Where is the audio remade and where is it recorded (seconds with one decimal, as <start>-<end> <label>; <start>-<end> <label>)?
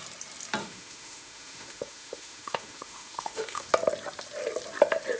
0.0-0.6 recorded; 0.6-3.7 remade; 3.7-5.2 recorded